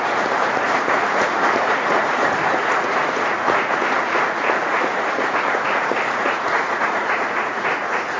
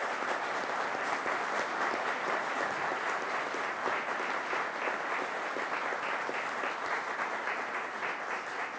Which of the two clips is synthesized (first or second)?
first